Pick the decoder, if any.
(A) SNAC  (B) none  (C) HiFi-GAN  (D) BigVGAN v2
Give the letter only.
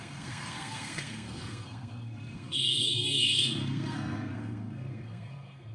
A